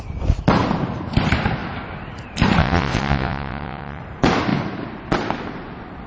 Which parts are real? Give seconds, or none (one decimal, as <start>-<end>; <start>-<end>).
0.0-2.6; 4.0-6.1